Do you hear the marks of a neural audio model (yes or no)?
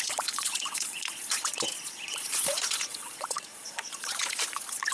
yes